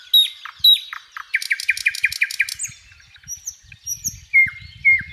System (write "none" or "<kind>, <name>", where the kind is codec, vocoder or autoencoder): none